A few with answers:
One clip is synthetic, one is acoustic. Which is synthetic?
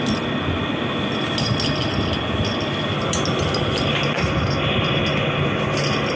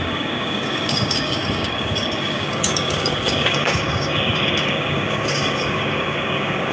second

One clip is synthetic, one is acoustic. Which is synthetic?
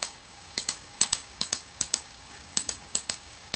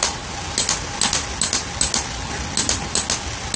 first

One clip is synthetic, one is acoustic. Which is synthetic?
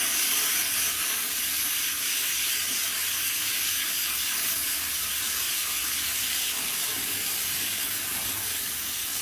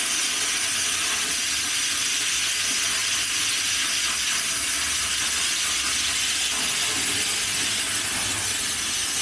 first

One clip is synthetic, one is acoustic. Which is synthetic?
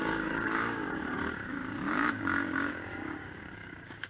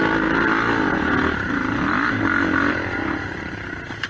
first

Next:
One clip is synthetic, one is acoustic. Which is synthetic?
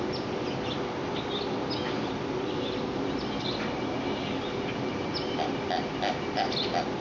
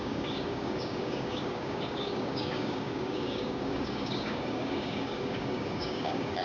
second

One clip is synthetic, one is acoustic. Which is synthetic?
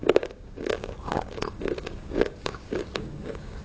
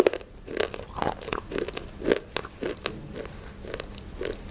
first